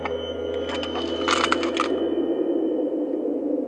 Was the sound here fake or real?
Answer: real